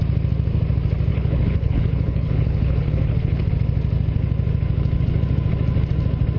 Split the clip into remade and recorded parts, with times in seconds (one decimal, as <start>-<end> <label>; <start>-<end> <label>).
0.0-1.1 recorded; 1.1-3.5 remade; 3.5-6.4 recorded